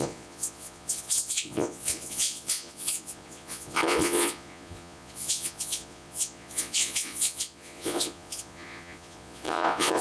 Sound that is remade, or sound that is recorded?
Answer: remade